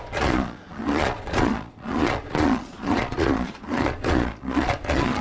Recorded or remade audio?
remade